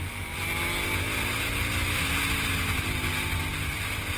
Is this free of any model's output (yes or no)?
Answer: yes